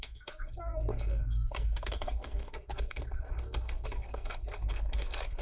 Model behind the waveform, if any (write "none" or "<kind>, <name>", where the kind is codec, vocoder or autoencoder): codec, SNAC